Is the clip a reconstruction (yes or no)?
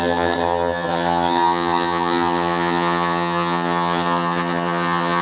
yes